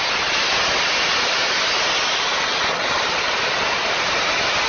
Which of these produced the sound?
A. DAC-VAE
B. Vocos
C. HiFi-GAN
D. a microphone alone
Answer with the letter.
D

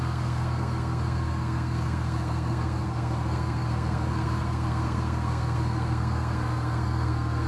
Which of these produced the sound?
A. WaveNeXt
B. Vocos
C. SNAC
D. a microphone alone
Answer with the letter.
C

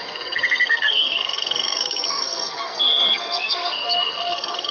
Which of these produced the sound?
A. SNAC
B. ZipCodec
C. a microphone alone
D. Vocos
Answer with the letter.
A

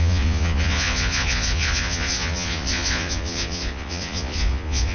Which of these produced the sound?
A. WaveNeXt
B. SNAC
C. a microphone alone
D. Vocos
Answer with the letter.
D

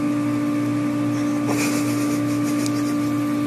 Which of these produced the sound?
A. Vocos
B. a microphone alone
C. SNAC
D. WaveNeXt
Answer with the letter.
B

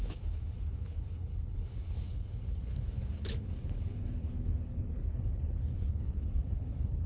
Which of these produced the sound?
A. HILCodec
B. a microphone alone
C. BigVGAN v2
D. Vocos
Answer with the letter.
A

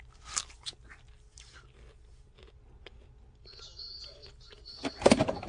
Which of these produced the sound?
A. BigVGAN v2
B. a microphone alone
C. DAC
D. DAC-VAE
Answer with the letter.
B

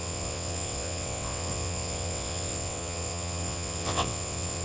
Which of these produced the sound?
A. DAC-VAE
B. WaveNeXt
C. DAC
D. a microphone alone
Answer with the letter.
B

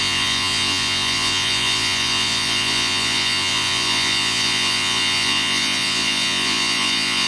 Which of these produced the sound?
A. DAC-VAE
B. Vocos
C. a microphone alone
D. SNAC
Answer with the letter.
B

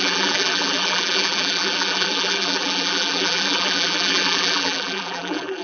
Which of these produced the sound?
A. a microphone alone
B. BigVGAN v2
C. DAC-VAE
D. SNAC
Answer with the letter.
B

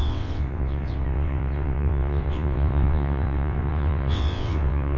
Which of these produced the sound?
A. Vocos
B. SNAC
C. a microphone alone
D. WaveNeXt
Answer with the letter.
D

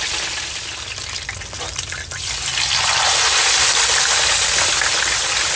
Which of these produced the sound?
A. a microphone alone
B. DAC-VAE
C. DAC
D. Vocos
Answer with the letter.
A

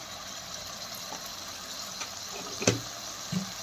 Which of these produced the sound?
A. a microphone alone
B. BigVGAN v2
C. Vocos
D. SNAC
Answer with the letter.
A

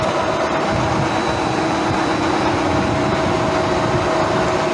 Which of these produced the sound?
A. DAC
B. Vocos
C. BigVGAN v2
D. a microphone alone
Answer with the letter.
D